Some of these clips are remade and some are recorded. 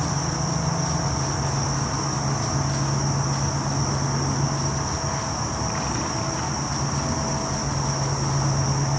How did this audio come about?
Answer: recorded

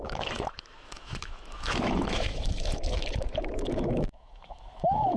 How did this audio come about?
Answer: remade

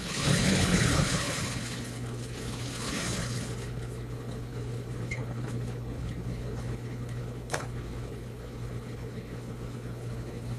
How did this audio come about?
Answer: remade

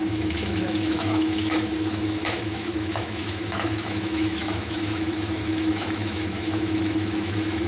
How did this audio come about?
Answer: remade